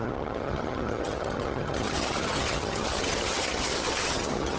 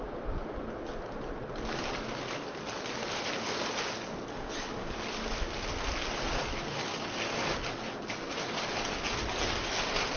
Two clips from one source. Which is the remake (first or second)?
first